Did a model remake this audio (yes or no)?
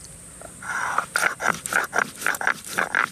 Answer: no